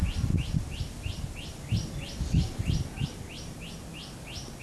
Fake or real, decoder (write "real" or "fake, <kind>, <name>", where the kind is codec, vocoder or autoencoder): real